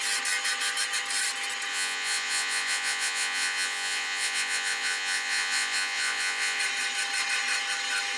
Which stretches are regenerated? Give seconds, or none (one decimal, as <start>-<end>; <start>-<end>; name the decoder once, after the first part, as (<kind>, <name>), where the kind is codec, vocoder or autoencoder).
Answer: 1.7-6.6 (vocoder, Vocos)